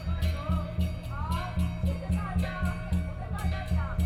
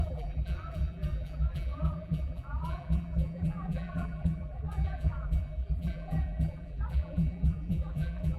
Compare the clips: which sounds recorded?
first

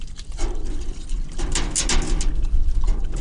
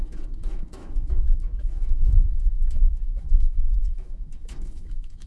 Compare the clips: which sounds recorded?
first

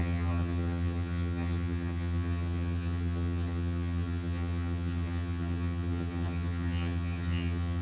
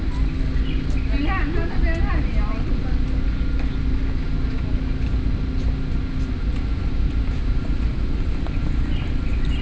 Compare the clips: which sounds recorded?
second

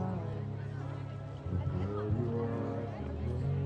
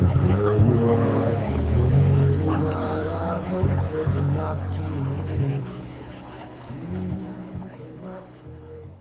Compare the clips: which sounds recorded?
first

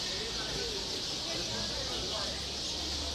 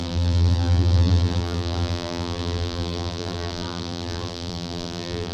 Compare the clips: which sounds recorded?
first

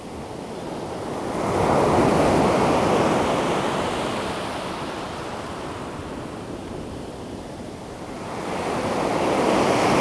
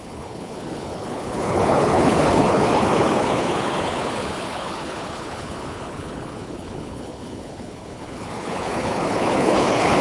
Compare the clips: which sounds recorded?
first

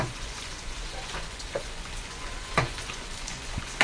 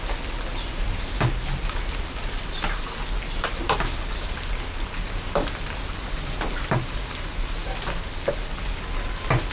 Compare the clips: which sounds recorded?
second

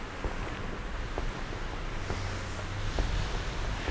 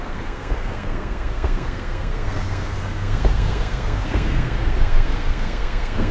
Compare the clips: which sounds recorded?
first